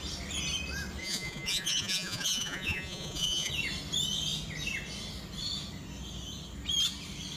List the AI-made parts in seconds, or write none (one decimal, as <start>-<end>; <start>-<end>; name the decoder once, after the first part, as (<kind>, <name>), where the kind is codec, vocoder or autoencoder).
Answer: 1.0-3.5 (vocoder, Vocos)